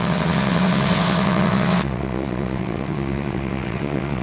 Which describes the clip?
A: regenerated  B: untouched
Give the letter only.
A